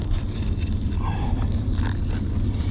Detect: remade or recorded remade